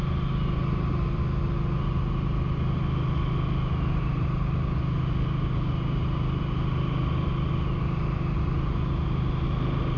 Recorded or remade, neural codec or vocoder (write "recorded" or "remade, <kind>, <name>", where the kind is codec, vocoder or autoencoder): recorded